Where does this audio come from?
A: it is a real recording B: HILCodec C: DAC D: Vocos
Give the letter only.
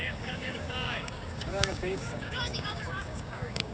C